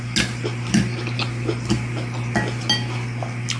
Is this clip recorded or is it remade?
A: recorded